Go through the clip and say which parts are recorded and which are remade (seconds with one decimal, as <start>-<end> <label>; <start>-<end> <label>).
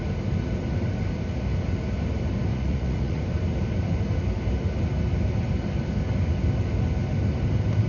0.0-2.5 recorded; 2.5-3.2 remade; 3.2-7.9 recorded